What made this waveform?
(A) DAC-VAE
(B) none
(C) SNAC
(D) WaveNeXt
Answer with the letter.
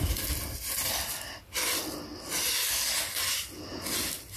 B